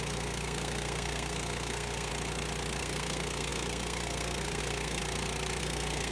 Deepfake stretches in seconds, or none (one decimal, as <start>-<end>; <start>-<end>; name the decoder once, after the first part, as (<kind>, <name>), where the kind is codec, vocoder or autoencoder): 0.0-2.1 (codec, SNAC); 2.8-5.0; 5.6-6.1